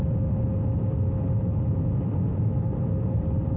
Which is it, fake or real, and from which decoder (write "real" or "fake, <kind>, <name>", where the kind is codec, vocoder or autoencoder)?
real